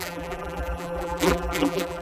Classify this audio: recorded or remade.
remade